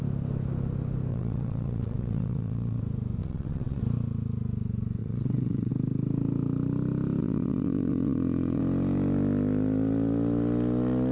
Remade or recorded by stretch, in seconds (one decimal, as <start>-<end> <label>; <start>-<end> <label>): 0.0-1.1 recorded; 1.1-2.8 remade; 2.8-3.2 recorded; 3.2-3.8 remade; 3.8-5.0 recorded; 5.0-5.7 remade; 5.7-7.2 recorded; 7.2-8.6 remade; 8.6-11.1 recorded